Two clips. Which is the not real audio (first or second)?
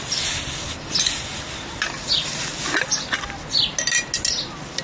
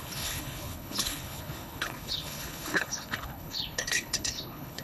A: second